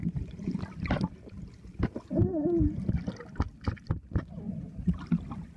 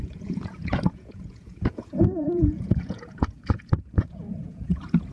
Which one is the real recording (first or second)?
first